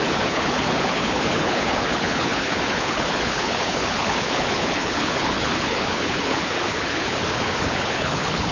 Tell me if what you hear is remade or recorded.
remade